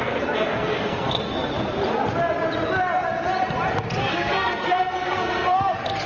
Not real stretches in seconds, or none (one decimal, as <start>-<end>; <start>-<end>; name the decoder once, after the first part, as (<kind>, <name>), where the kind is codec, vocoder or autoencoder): 0.0-1.5 (codec, SNAC); 4.0-6.1